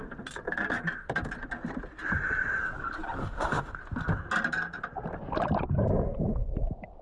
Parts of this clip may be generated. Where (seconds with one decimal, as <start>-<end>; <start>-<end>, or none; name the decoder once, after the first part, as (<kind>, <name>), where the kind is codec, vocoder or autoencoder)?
3.2-3.7 (autoencoder, DAC-VAE)